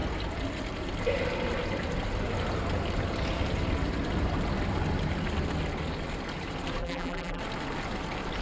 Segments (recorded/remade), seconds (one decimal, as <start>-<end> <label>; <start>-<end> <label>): 0.0-6.8 recorded; 6.8-7.4 remade; 7.4-8.4 recorded